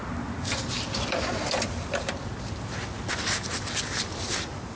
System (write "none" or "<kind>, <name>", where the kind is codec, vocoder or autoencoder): none